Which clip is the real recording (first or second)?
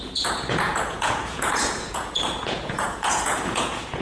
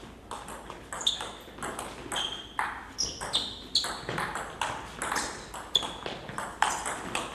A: second